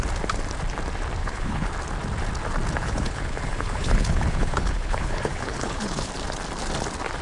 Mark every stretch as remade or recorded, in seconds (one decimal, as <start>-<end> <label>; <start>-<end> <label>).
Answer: 0.0-1.2 recorded; 1.2-1.7 remade; 1.7-2.8 recorded; 2.8-6.1 remade; 6.1-7.2 recorded